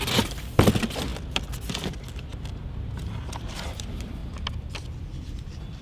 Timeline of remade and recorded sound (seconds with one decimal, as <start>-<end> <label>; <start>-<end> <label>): 0.0-2.3 remade; 2.3-3.2 recorded; 3.2-4.2 remade; 4.2-5.1 recorded; 5.1-5.8 remade